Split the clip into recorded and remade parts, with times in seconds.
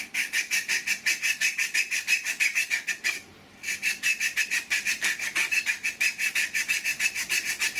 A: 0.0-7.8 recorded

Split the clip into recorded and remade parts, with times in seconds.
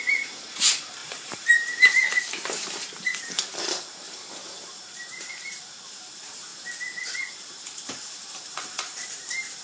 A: 0.0-6.5 remade; 6.5-7.0 recorded; 7.0-9.6 remade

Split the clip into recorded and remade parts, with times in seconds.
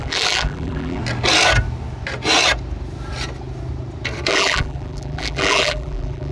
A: 0.0-1.0 remade; 1.0-4.3 recorded; 4.3-6.3 remade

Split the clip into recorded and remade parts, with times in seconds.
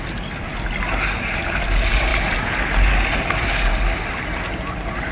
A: 0.0-5.1 recorded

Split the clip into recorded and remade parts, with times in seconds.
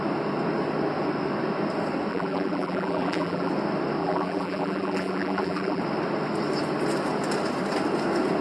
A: 0.0-2.1 recorded; 2.1-3.5 remade; 3.5-4.0 recorded; 4.0-5.8 remade; 5.8-8.4 recorded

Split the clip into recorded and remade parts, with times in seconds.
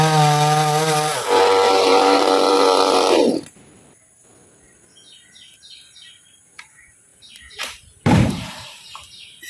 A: 0.0-1.9 recorded; 1.9-4.3 remade; 4.3-7.1 recorded; 7.1-9.5 remade